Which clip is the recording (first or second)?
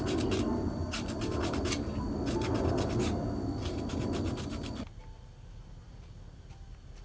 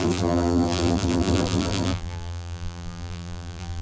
first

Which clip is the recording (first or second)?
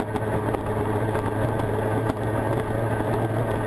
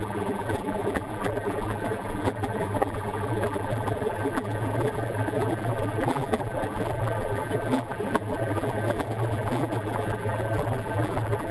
first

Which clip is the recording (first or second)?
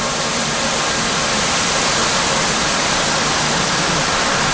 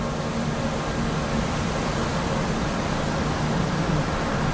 second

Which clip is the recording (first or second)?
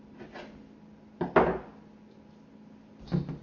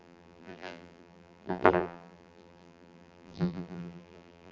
first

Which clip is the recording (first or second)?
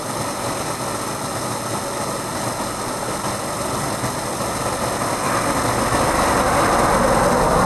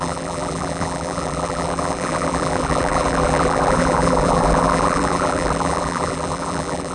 first